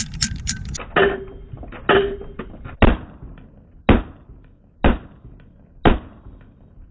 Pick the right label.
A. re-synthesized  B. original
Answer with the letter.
B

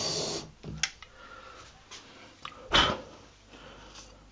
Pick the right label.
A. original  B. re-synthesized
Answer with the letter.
A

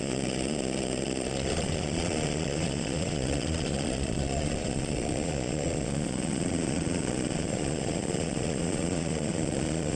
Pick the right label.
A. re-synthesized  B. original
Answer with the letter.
A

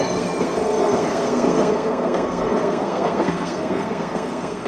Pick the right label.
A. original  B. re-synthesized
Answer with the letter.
B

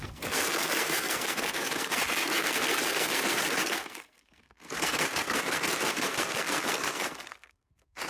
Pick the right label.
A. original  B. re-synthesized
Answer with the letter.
B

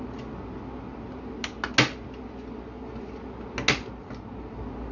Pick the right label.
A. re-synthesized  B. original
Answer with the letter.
B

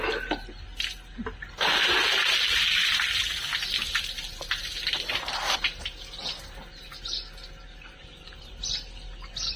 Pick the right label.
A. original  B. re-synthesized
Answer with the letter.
A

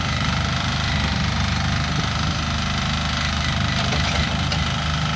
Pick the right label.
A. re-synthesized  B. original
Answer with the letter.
B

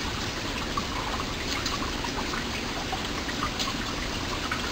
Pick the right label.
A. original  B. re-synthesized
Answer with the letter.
A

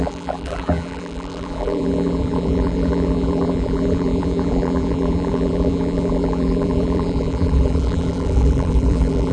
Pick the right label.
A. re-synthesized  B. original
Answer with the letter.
A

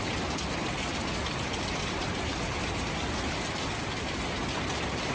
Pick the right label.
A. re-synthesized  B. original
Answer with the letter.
B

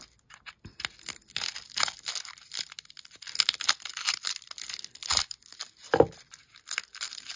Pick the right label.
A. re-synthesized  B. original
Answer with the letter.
B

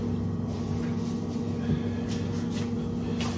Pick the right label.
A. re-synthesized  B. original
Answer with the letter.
B